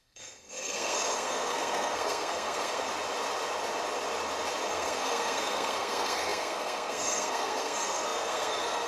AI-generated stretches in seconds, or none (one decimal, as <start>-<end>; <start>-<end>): 0.0-2.9; 4.7-8.9